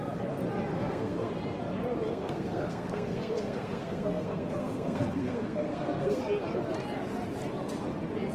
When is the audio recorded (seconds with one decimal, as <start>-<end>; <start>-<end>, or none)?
0.0-0.7; 1.3-2.1; 6.2-8.3